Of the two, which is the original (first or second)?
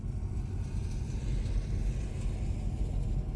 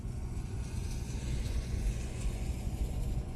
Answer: first